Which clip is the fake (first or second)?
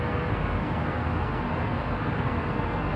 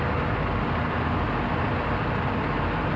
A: first